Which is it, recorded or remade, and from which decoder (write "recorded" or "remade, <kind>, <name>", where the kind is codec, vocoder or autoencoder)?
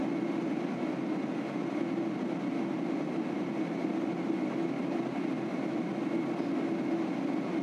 recorded